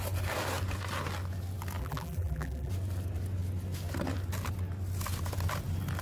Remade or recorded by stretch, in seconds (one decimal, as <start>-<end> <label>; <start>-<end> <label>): 0.0-1.8 recorded; 1.8-2.7 remade; 2.7-6.0 recorded